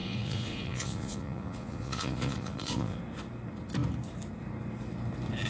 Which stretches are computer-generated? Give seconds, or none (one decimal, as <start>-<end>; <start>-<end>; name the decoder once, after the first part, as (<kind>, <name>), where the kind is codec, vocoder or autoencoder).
0.0-3.0 (vocoder, Vocos)